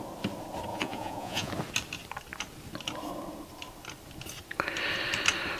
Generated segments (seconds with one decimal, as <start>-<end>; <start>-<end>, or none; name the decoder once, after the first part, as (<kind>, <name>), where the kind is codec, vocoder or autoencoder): 0.7-1.5 (vocoder, Vocos)